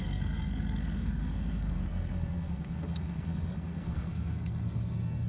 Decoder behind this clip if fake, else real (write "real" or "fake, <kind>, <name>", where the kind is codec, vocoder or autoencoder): fake, codec, SNAC